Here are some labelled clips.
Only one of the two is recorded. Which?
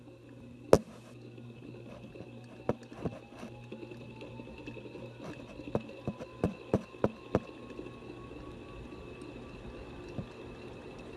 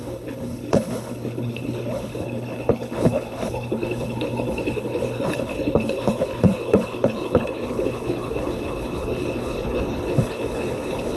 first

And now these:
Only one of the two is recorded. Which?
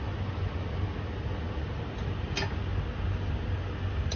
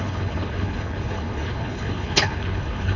first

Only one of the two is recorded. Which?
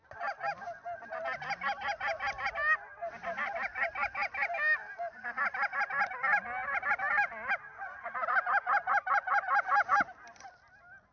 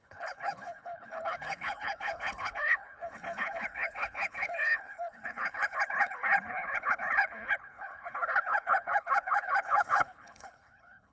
first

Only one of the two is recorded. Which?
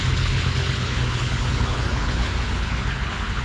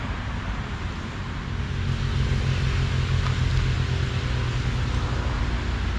second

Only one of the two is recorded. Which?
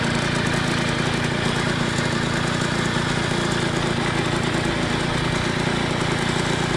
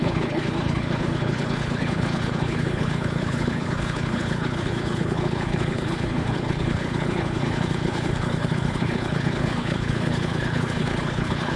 first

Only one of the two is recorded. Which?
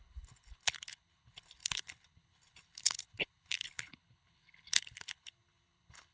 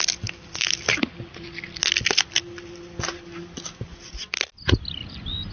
second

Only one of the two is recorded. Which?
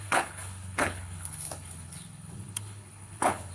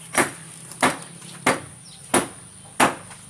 second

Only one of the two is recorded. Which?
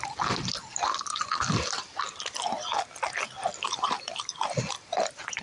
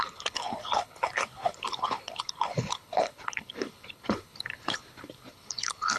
first